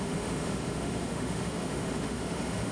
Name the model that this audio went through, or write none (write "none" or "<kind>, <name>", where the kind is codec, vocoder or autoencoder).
autoencoder, DAC-VAE